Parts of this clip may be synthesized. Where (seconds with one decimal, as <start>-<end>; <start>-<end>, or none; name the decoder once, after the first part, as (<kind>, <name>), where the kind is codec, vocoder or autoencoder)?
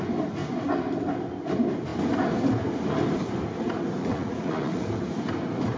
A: 4.0-4.8 (vocoder, Vocos)